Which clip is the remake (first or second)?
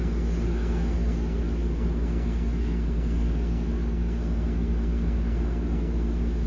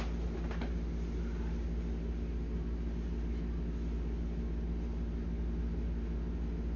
first